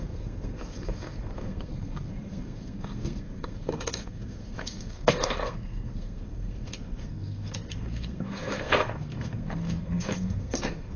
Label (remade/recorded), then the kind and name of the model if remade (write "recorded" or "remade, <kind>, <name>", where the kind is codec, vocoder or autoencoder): remade, codec, SNAC